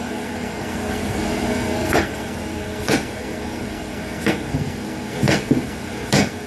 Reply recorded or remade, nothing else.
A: remade